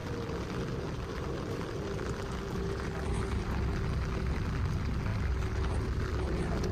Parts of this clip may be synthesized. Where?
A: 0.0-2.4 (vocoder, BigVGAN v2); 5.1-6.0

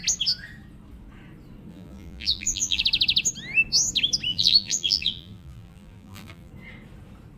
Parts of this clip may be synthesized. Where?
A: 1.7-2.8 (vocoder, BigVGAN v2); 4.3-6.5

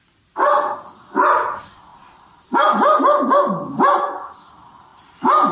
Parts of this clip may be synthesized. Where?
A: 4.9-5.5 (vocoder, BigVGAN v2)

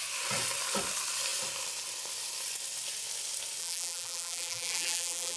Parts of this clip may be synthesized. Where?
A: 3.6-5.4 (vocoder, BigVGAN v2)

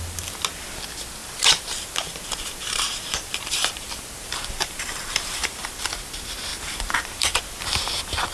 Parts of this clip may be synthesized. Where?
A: 1.2-5.7 (vocoder, BigVGAN v2); 6.5-7.3

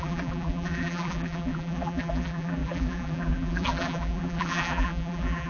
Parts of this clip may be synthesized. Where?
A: 0.0-5.5 (vocoder, BigVGAN v2)

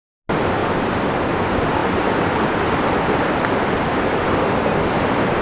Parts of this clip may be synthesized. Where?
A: 0.6-1.3 (vocoder, BigVGAN v2)